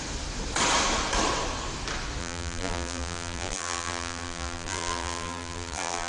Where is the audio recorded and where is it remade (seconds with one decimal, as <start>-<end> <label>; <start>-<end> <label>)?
0.0-2.2 recorded; 2.2-6.1 remade